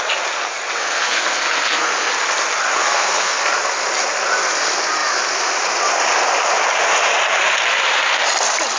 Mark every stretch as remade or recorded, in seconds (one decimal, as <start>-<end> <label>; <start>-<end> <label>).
0.0-0.8 recorded; 0.8-2.1 remade; 2.1-2.8 recorded; 2.8-3.4 remade; 3.4-8.8 recorded